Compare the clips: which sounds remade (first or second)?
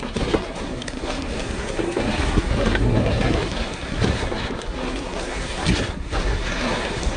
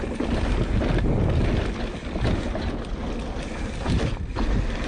first